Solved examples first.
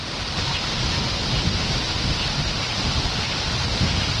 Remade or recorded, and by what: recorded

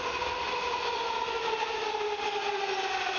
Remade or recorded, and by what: recorded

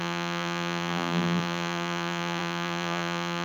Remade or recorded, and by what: remade, vocoder, BigVGAN v2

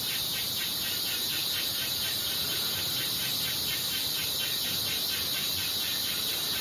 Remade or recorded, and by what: recorded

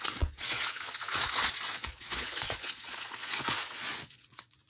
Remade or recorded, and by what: remade, vocoder, Vocos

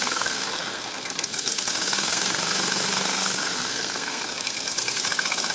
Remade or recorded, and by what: remade, codec, SNAC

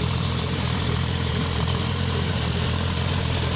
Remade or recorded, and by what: remade, vocoder, BigVGAN v2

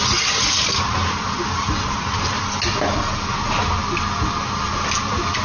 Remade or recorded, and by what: recorded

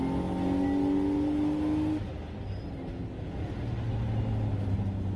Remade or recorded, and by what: recorded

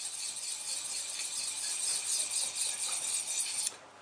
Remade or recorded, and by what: recorded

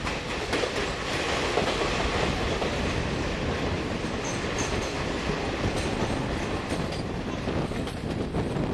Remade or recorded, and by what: recorded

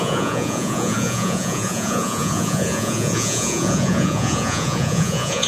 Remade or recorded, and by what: remade, vocoder, Vocos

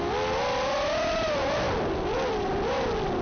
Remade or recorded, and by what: recorded